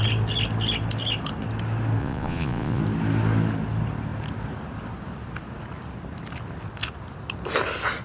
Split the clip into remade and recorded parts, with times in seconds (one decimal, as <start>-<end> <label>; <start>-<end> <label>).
0.0-2.0 recorded; 2.0-2.8 remade; 2.8-8.0 recorded